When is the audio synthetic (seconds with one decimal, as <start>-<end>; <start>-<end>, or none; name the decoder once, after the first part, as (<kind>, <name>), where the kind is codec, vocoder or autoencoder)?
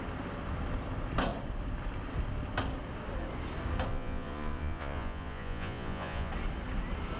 3.9-6.3 (vocoder, Vocos)